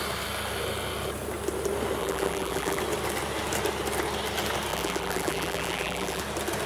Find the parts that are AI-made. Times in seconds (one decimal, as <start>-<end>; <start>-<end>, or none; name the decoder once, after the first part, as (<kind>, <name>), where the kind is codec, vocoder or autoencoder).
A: 2.0-2.8 (vocoder, BigVGAN v2); 4.7-6.2